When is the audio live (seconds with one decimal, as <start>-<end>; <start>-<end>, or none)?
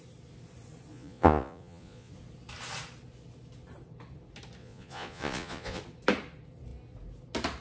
0.0-0.9; 2.1-4.6; 5.8-7.6